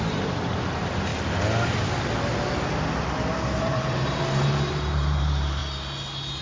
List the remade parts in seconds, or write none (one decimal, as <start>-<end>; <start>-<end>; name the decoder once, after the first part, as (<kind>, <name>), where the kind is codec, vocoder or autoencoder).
0.0-1.1 (vocoder, BigVGAN v2); 3.6-5.6

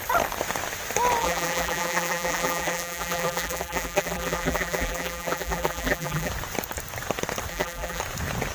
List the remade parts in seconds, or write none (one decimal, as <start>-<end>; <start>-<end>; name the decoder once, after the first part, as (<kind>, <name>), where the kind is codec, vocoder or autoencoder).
1.2-6.3 (vocoder, BigVGAN v2); 7.5-8.0

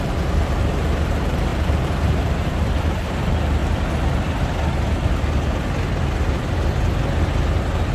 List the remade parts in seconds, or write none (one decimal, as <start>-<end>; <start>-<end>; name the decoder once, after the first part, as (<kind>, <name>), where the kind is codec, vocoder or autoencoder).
0.0-3.6 (vocoder, BigVGAN v2); 7.2-7.9